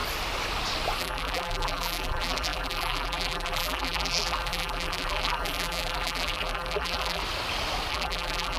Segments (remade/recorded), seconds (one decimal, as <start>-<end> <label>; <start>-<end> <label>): 0.0-1.0 recorded; 1.0-7.2 remade; 7.2-7.9 recorded; 7.9-8.6 remade